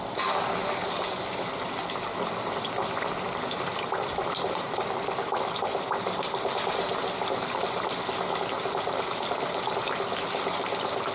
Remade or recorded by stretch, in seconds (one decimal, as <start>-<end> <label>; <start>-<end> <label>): 0.0-11.1 recorded